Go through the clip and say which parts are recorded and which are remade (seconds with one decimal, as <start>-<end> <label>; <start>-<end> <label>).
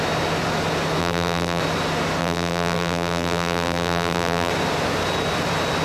0.0-1.0 recorded; 1.0-1.6 remade; 1.6-2.2 recorded; 2.2-4.5 remade; 4.5-5.8 recorded